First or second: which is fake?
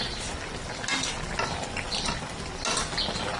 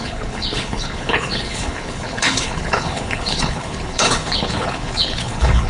second